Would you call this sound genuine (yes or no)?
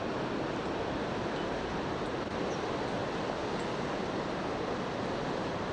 yes